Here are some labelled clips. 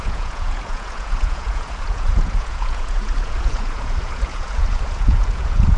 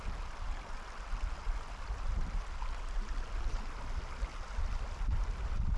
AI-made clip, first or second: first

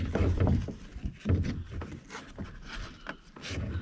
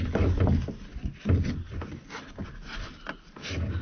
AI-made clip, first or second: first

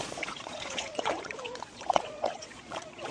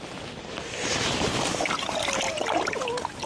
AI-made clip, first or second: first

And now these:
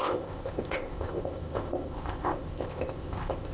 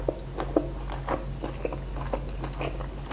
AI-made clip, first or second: first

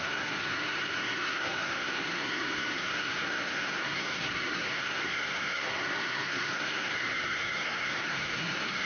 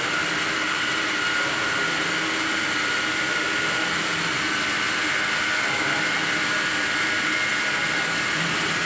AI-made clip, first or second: first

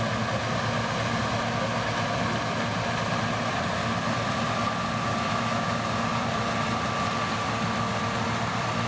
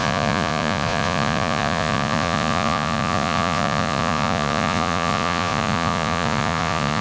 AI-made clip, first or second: second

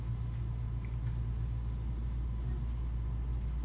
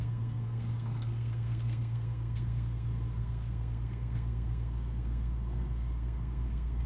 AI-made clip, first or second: second